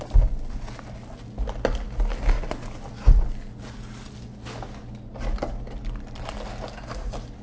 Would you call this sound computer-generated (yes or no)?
no